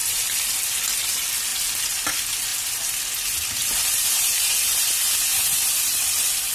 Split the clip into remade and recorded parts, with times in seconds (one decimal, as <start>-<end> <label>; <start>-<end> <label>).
0.0-0.5 remade; 0.5-1.5 recorded; 1.5-2.1 remade; 2.1-2.5 recorded; 2.5-3.0 remade; 3.0-3.6 recorded; 3.6-4.8 remade; 4.8-6.5 recorded